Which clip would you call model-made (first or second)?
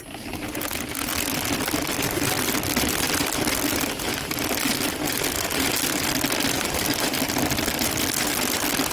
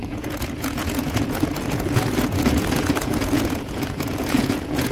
second